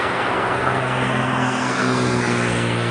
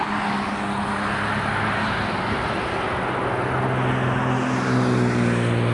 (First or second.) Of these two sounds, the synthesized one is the first